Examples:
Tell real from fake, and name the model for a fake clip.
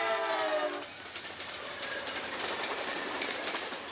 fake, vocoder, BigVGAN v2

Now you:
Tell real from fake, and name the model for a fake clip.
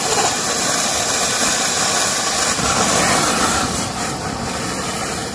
real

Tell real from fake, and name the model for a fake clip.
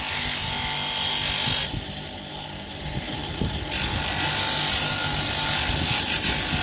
real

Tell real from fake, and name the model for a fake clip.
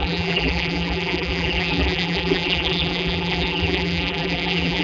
fake, vocoder, BigVGAN v2